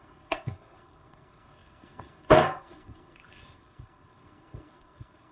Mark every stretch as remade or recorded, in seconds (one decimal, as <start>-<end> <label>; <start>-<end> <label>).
0.0-5.3 remade